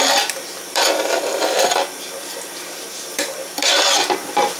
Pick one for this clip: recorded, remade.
remade